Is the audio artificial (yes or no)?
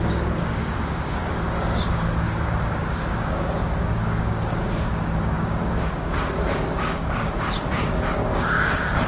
yes